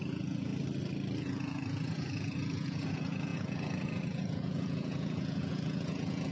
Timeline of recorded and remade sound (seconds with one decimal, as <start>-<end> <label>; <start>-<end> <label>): 0.0-0.5 remade; 0.5-1.2 recorded; 1.2-6.3 remade